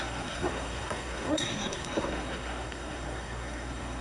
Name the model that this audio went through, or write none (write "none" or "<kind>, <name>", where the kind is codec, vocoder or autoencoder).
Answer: codec, SNAC